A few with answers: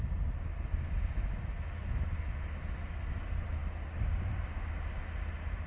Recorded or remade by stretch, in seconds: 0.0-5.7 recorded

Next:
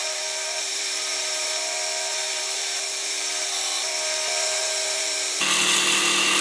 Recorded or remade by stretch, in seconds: 0.0-6.4 remade

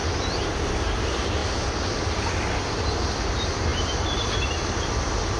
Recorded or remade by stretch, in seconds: 0.0-0.7 remade; 0.7-3.7 recorded; 3.7-4.9 remade; 4.9-5.4 recorded

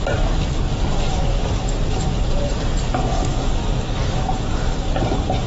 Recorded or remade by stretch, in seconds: 0.0-5.5 recorded